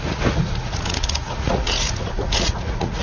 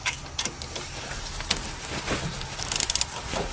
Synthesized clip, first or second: first